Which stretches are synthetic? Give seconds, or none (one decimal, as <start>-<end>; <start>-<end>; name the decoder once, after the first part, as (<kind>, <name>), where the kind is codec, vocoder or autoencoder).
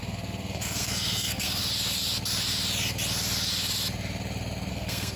0.0-1.6 (codec, SNAC); 4.7-5.2